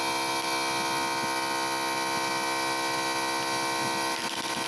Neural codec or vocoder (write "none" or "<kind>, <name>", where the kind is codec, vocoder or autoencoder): none